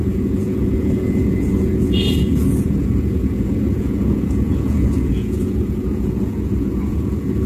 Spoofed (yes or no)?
yes